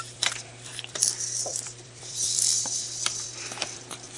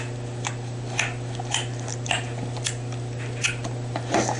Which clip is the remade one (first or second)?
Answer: first